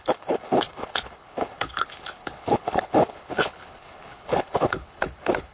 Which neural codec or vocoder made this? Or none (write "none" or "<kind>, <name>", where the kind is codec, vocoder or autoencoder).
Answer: codec, HILCodec